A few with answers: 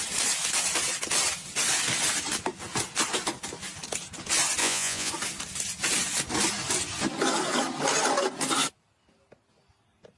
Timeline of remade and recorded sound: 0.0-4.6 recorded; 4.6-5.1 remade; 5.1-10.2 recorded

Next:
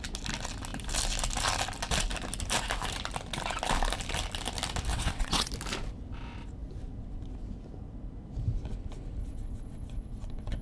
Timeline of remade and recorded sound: 0.0-4.9 recorded; 4.9-5.5 remade; 5.5-9.2 recorded; 9.2-10.6 remade

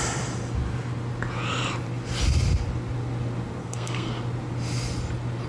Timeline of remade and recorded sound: 0.0-3.6 recorded; 3.6-4.1 remade; 4.1-5.5 recorded

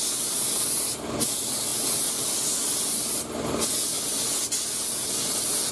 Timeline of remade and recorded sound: 0.0-5.7 recorded

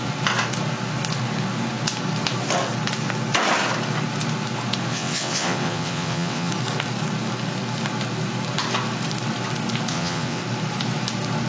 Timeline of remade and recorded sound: 0.0-4.9 recorded; 4.9-6.5 remade; 6.5-9.9 recorded; 9.9-10.4 remade; 10.4-11.5 recorded